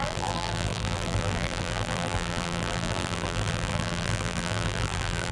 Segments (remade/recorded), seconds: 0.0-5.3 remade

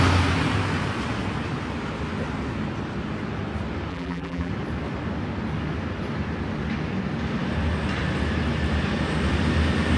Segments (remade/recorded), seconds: 0.0-3.9 recorded; 3.9-4.5 remade; 4.5-10.0 recorded

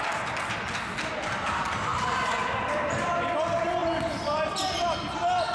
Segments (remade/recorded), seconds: 0.0-1.9 recorded; 1.9-3.2 remade; 3.2-3.8 recorded; 3.8-4.4 remade; 4.4-5.5 recorded

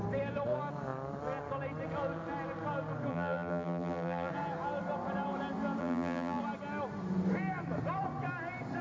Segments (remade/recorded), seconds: 0.0-3.1 recorded; 3.1-4.3 remade; 4.3-5.8 recorded; 5.8-6.4 remade; 6.4-8.8 recorded

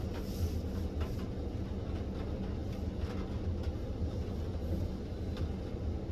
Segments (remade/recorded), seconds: 0.0-6.1 recorded

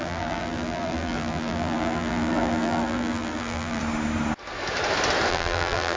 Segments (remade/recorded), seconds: 0.0-3.8 remade; 3.8-5.3 recorded; 5.3-6.0 remade

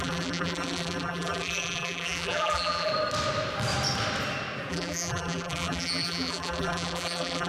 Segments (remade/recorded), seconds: 0.0-2.9 remade; 2.9-4.7 recorded; 4.7-7.5 remade

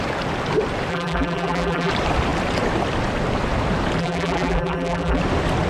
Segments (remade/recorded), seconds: 0.0-0.9 recorded; 0.9-1.9 remade; 1.9-4.0 recorded; 4.0-5.2 remade; 5.2-5.7 recorded